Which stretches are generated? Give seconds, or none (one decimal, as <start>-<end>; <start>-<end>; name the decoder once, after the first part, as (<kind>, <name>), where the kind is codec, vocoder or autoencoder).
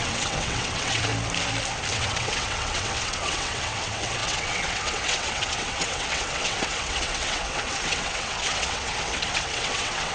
0.0-1.1 (vocoder, WaveNeXt); 1.9-10.1